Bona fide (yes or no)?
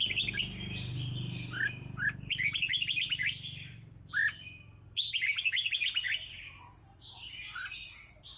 yes